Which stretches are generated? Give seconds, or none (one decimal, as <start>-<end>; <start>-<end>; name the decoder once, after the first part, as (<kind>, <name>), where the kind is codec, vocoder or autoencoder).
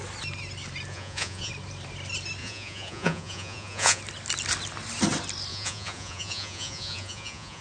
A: 0.9-1.5 (vocoder, Vocos); 2.4-4.0; 5.5-7.6